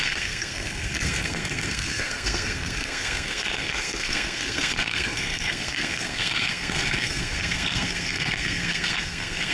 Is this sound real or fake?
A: fake